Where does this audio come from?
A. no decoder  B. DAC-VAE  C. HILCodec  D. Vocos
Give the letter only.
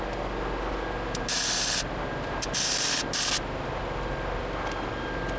A